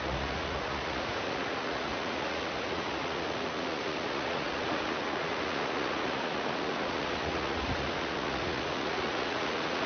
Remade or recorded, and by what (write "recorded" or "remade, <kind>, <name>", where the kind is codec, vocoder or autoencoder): remade, vocoder, Vocos